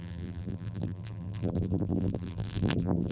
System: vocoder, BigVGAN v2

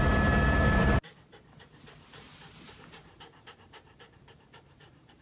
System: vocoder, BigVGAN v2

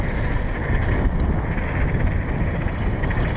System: none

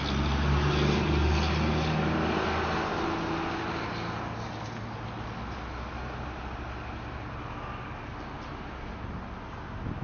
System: none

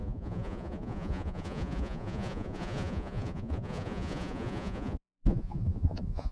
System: vocoder, Vocos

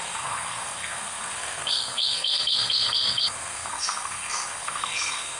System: codec, SNAC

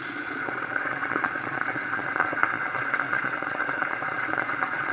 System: vocoder, Vocos